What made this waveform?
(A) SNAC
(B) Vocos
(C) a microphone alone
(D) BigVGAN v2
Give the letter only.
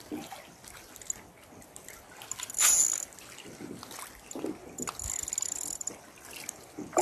C